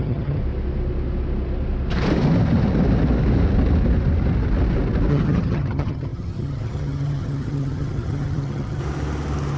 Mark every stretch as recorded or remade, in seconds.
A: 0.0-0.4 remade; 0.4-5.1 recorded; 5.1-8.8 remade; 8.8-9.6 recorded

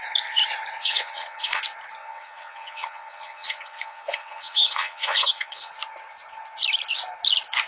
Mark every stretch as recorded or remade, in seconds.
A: 0.0-0.8 recorded; 0.8-1.6 remade; 1.6-2.0 recorded; 2.0-5.7 remade; 5.7-7.7 recorded